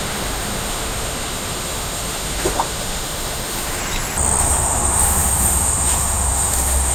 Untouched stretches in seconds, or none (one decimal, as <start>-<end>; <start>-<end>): 3.8-4.4

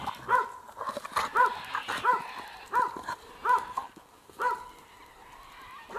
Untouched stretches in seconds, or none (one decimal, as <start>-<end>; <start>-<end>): 0.0-3.8; 4.4-6.0

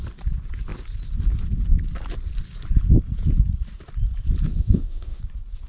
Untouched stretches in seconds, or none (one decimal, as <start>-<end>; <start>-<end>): 0.0-4.5; 5.2-5.7